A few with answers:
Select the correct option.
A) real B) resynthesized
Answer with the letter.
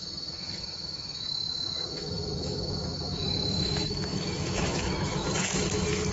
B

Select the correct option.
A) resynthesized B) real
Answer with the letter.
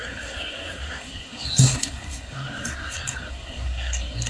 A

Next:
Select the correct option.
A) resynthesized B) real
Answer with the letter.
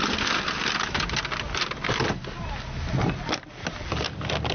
B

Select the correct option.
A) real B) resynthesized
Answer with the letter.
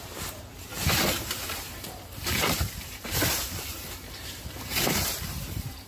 B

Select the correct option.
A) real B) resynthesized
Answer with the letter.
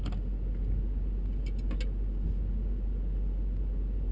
A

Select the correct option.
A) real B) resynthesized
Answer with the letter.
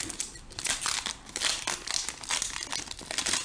A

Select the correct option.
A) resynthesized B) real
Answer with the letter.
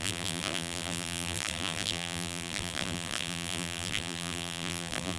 A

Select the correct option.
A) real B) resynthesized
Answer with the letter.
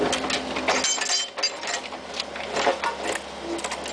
A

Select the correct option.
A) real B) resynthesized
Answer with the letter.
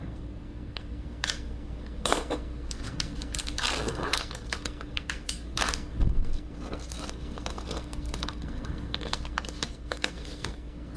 B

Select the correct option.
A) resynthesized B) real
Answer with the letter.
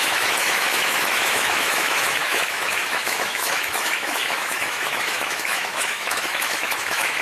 A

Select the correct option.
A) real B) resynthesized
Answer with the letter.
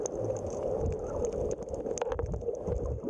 A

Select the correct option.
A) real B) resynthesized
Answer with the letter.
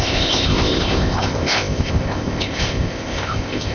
B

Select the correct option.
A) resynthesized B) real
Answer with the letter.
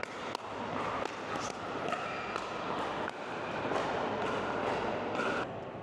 B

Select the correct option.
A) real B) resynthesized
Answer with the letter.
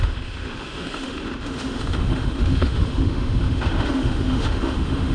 B